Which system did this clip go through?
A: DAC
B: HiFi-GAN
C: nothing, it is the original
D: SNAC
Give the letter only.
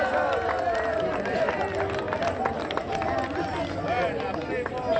C